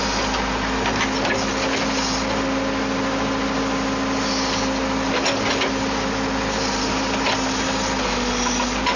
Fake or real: real